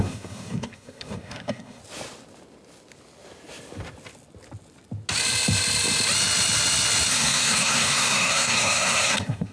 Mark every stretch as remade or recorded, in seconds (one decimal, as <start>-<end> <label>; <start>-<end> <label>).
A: 0.0-1.8 remade; 1.8-7.1 recorded; 7.1-9.5 remade